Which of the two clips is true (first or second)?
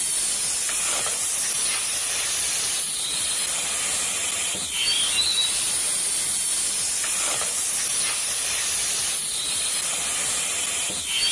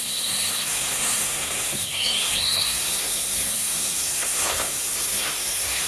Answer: first